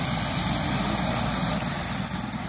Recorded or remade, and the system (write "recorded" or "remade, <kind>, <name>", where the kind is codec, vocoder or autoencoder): recorded